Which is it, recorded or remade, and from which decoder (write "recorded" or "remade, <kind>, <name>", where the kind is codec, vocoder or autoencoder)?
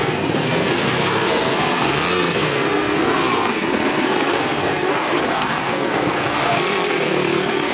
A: remade, codec, SNAC